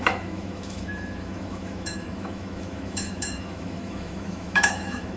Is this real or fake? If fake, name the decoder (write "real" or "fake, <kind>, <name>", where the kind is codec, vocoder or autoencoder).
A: fake, autoencoder, DAC-VAE